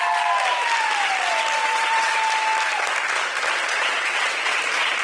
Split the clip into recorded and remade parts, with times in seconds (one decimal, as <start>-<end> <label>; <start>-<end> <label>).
0.0-1.6 recorded; 1.6-2.2 remade; 2.2-3.6 recorded; 3.6-4.6 remade; 4.6-5.0 recorded